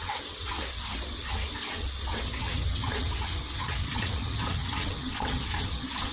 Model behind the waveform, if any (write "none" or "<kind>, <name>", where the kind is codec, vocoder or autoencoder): vocoder, WaveNeXt